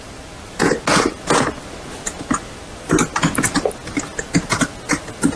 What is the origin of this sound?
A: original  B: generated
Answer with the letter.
A